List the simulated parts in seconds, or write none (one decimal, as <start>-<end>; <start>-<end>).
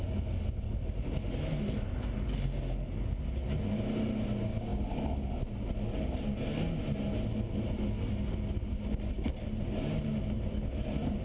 none